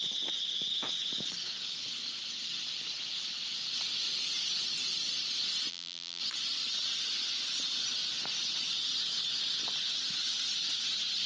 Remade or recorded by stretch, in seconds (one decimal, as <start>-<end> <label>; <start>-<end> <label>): 0.0-5.7 recorded; 5.7-6.2 remade; 6.2-11.3 recorded